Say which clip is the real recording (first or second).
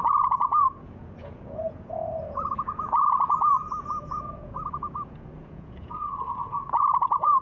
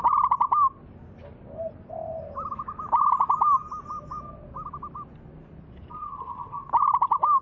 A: second